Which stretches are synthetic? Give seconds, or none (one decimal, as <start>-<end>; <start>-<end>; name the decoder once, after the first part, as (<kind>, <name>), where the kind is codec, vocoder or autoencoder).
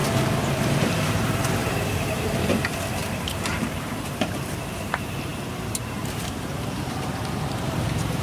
0.6-1.6 (vocoder, BigVGAN v2); 3.0-5.3; 5.8-8.2